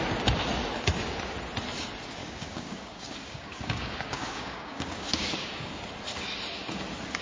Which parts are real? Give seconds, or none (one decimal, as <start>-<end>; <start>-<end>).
0.0-2.2; 5.8-7.2